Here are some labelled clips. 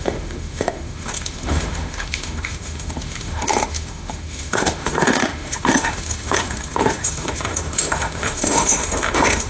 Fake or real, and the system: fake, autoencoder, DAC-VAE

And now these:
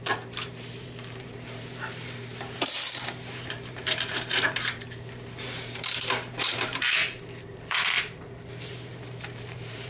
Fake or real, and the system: fake, vocoder, BigVGAN v2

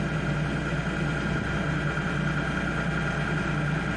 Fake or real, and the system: real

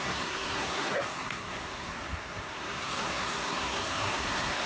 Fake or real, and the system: fake, codec, SNAC